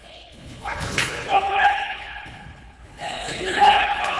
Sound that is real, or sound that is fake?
fake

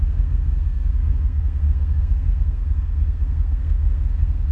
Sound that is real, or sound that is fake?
fake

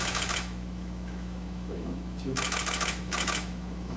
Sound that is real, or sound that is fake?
fake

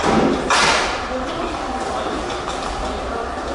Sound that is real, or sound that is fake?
real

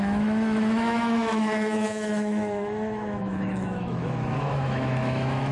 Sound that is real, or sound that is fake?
fake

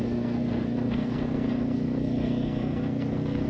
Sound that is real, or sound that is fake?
fake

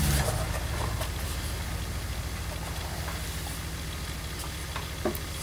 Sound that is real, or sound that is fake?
real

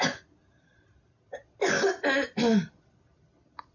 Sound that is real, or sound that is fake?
real